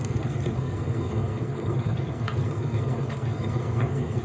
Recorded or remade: remade